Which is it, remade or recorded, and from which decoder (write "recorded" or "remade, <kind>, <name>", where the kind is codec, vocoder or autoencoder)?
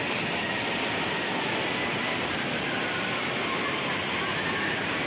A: recorded